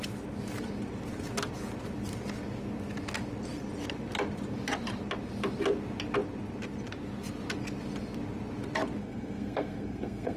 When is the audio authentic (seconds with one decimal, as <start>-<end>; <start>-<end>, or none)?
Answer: 0.0-9.0

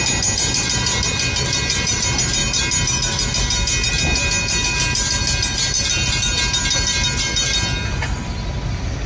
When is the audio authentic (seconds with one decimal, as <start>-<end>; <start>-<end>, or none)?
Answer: 0.0-9.1

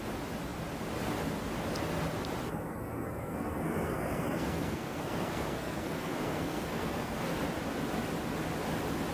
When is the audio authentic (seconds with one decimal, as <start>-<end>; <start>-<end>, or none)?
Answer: 0.0-2.5; 7.4-9.1

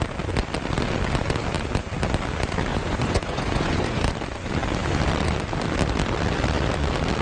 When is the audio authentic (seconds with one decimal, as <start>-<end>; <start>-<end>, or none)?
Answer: 0.0-2.7; 4.1-7.2